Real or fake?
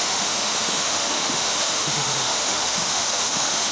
fake